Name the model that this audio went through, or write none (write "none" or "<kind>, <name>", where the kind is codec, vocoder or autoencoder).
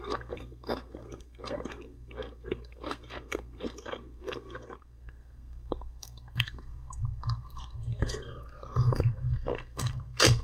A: codec, SNAC